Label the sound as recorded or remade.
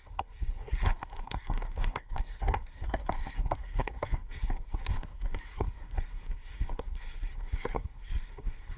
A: remade